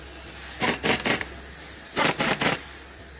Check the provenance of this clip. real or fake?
real